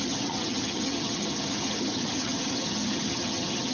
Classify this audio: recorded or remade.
remade